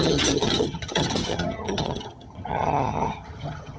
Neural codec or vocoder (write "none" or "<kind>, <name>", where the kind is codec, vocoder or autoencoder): vocoder, HiFi-GAN